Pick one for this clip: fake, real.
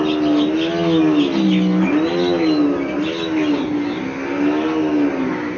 real